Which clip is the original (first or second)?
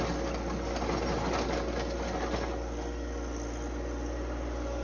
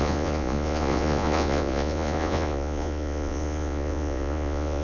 first